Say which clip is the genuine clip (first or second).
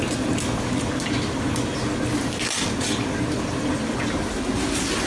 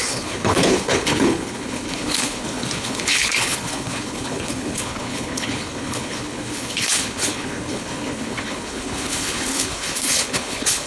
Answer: first